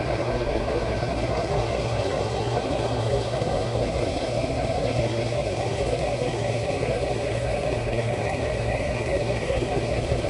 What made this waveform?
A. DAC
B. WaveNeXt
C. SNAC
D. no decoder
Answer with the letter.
C